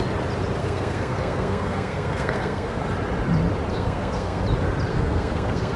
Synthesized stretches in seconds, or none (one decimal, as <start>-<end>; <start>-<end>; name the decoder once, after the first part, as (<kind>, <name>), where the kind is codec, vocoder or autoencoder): 0.6-2.8 (codec, SNAC); 3.7-4.4; 4.9-5.8

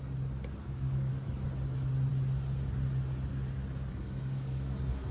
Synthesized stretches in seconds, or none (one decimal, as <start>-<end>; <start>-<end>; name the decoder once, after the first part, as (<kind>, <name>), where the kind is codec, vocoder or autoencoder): 0.6-1.1 (codec, SNAC); 3.9-5.1

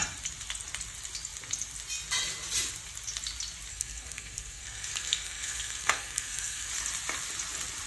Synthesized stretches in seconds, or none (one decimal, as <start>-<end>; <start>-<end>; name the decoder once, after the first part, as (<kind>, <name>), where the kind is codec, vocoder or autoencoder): 3.7-6.7 (codec, SNAC)

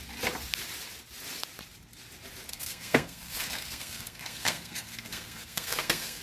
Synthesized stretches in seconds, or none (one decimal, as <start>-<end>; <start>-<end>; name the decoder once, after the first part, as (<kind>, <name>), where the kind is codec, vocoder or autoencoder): 2.5-6.2 (codec, SNAC)

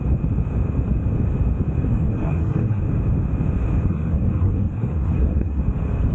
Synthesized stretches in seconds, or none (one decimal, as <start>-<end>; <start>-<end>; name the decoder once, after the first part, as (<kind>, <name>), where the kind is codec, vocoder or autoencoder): 1.9-2.8 (codec, SNAC); 3.9-5.6

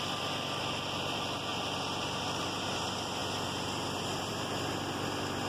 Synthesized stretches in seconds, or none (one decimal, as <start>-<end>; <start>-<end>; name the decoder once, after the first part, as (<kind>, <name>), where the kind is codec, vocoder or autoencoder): none

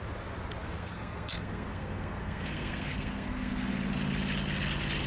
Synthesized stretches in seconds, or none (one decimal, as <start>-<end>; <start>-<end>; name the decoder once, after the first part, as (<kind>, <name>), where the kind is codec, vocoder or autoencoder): 0.6-3.7 (codec, SNAC)

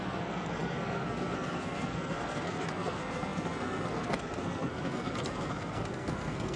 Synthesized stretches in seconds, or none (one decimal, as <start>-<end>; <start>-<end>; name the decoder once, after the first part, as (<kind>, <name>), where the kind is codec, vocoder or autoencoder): 0.0-6.6 (codec, SNAC)